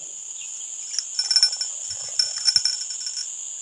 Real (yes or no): yes